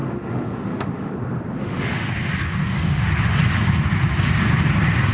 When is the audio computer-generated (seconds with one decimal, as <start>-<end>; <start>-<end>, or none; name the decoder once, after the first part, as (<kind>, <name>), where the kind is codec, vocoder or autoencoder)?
0.0-1.1 (autoencoder, DAC-VAE); 1.6-2.1; 2.6-3.1